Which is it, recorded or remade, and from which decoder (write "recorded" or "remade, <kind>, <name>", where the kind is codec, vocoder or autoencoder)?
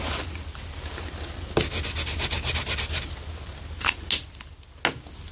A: recorded